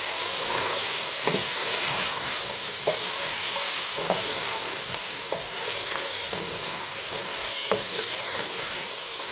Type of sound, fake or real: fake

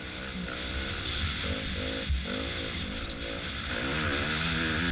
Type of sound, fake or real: real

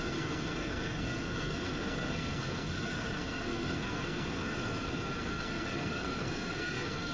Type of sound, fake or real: fake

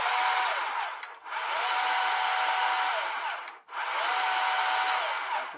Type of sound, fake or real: real